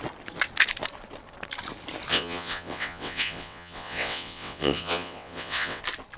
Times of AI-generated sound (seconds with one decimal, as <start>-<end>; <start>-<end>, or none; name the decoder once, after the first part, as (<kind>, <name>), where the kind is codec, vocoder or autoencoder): 2.1-5.8 (vocoder, WaveNeXt)